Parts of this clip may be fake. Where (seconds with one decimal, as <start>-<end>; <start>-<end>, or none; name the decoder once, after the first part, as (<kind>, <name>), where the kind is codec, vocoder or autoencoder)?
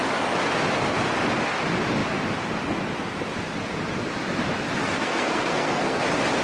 4.8-6.0 (codec, SNAC)